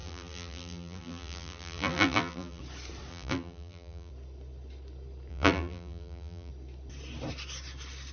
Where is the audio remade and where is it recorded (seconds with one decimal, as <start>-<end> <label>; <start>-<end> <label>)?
0.0-2.6 remade; 2.6-3.1 recorded; 3.1-4.1 remade; 4.1-5.3 recorded; 5.3-6.5 remade; 6.5-8.1 recorded